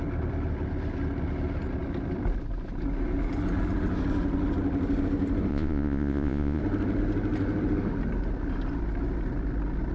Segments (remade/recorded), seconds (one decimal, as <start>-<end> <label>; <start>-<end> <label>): 0.0-5.5 recorded; 5.5-6.6 remade; 6.6-9.9 recorded

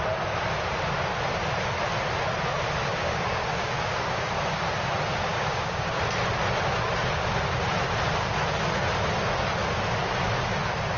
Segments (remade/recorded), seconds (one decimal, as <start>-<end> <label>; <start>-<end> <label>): 0.0-2.9 recorded; 2.9-4.3 remade; 4.3-5.3 recorded; 5.3-6.0 remade; 6.0-11.0 recorded

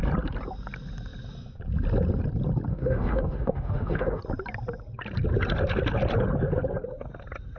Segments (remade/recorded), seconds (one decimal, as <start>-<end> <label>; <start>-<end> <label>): 0.0-2.7 recorded; 2.7-4.2 remade; 4.2-7.6 recorded

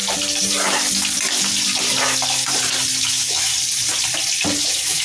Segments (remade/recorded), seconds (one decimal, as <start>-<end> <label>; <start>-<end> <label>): 0.0-3.0 recorded; 3.0-3.5 remade; 3.5-4.6 recorded; 4.6-5.0 remade